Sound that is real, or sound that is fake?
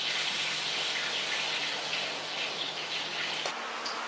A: real